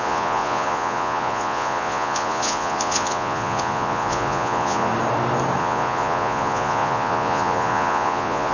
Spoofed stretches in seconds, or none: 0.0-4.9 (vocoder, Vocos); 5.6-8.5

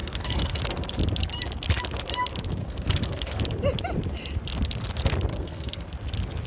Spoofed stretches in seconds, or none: 0.0-0.6 (codec, SNAC); 2.6-3.4; 5.3-5.9

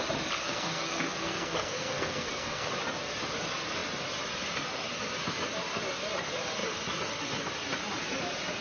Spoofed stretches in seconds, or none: 0.4-2.7 (codec, SNAC)